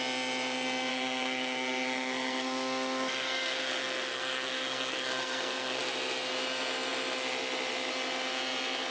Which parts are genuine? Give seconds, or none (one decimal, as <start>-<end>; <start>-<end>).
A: 0.0-0.9; 5.8-8.9